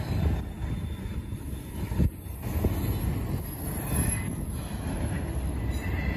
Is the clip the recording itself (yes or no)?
yes